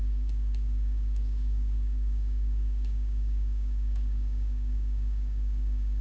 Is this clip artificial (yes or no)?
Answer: yes